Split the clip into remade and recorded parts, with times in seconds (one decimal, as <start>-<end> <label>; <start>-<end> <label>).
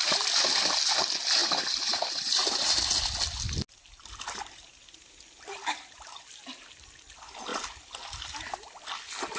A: 0.0-1.4 recorded; 1.4-2.8 remade; 2.8-9.4 recorded